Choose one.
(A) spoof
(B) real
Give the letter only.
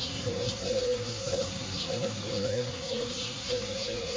A